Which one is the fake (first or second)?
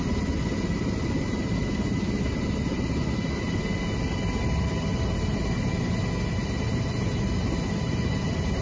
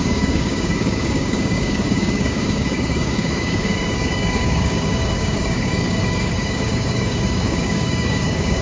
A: second